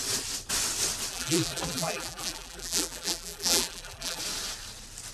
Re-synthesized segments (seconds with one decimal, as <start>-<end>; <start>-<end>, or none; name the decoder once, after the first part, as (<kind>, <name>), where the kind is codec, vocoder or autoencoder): 1.1-4.2 (vocoder, BigVGAN v2)